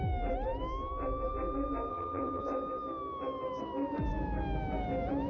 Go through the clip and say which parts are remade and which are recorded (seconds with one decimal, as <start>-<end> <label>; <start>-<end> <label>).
0.0-1.9 recorded; 1.9-2.4 remade; 2.4-5.3 recorded